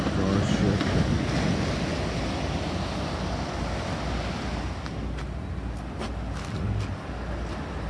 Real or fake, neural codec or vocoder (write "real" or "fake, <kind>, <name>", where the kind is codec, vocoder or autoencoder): real